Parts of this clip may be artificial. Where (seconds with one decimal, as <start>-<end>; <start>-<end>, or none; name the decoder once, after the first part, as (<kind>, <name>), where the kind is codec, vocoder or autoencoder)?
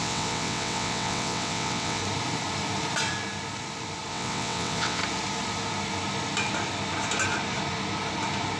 0.0-2.0 (vocoder, WaveNeXt); 4.1-5.0